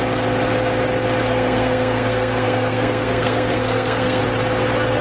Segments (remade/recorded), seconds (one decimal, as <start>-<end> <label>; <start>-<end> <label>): 0.0-1.2 recorded; 1.2-4.2 remade; 4.2-5.0 recorded